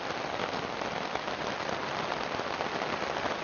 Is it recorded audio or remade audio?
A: recorded